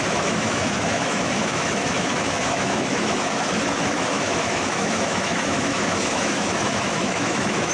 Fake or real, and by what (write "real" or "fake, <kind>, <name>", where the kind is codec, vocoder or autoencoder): fake, autoencoder, DAC-VAE